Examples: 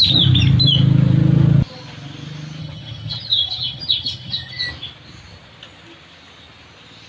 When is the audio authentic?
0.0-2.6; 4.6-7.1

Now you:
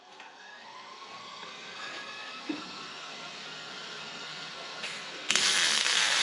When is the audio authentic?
none